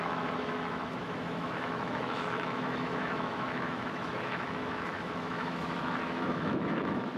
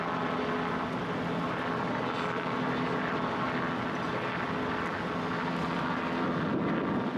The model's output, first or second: first